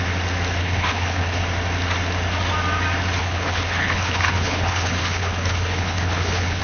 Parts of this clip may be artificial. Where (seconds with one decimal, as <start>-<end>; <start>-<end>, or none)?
0.6-1.4; 3.2-6.6